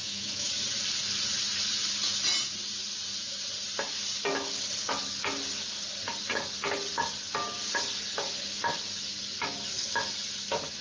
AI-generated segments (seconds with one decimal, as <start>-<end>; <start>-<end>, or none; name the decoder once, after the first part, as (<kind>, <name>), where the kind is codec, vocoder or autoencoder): 0.0-0.5 (autoencoder, DAC-VAE)